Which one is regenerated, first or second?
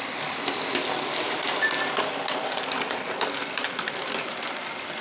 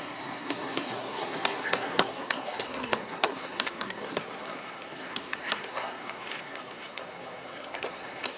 second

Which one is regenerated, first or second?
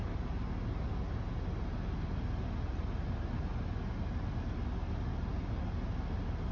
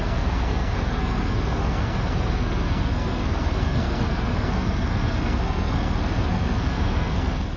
second